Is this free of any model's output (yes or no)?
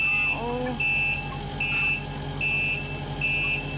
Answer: yes